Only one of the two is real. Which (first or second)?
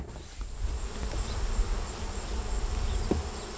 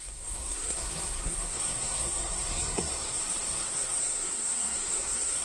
first